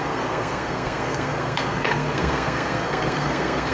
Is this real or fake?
fake